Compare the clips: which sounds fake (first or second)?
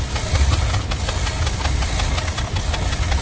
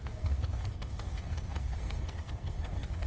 second